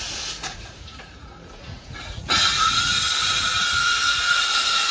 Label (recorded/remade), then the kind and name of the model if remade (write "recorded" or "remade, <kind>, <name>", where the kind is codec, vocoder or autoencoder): remade, vocoder, Vocos